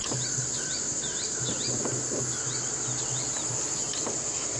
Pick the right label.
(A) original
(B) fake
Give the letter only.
A